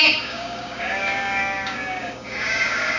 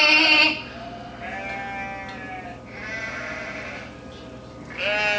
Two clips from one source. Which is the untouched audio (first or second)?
second